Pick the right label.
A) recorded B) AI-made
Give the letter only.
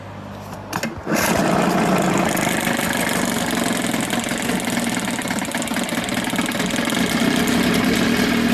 A